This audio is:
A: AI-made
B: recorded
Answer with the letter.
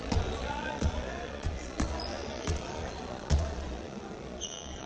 A